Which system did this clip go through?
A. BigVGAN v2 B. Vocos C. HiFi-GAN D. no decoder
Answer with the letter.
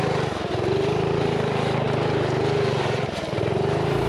A